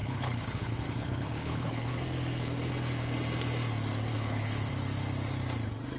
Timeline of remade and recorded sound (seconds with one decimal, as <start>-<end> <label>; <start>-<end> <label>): 0.0-1.9 remade; 1.9-4.1 recorded; 4.1-4.7 remade; 4.7-6.0 recorded